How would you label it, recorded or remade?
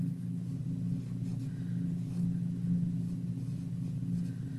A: recorded